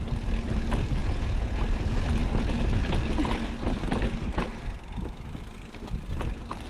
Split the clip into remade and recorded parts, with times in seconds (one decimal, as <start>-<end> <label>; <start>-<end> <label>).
0.0-1.0 recorded; 1.0-1.6 remade; 1.6-6.7 recorded